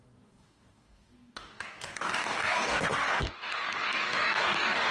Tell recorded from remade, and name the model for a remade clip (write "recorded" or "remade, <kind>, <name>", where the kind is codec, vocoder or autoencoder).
remade, codec, DAC